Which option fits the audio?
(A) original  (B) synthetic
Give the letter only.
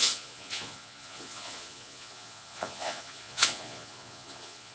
B